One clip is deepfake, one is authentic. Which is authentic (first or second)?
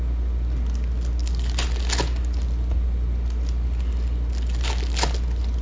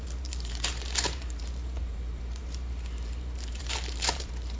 first